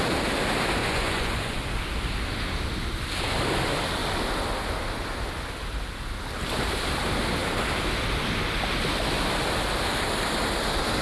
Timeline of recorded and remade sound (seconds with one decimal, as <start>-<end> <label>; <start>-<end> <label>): 0.0-0.8 recorded; 0.8-1.6 remade; 1.6-11.0 recorded